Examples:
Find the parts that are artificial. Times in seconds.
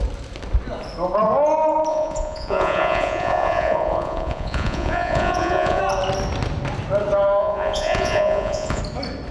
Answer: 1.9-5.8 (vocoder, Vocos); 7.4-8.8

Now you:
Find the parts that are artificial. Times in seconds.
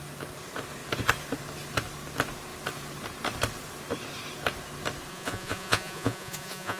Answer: 5.1-6.8 (vocoder, Vocos)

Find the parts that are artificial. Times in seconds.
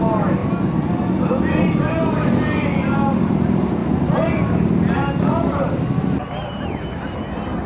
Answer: none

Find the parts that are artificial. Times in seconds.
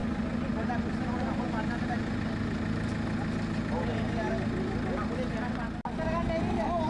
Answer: none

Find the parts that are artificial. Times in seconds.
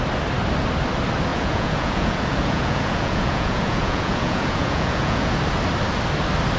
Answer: 1.3-5.3 (vocoder, Vocos)